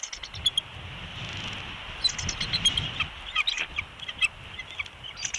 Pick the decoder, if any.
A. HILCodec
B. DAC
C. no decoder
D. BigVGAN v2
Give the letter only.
C